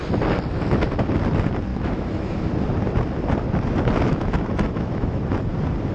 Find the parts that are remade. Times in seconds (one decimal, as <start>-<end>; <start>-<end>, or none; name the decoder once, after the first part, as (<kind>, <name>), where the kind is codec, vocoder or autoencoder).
1.7-2.5 (autoencoder, DAC-VAE); 4.1-5.2